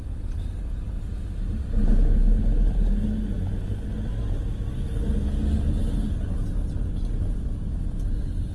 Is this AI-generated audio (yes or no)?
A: no